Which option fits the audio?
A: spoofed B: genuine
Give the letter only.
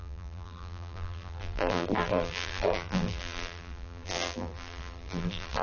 A